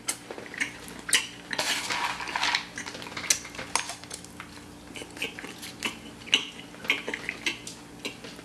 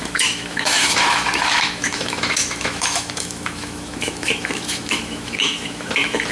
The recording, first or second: first